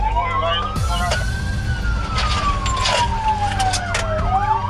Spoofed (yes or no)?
no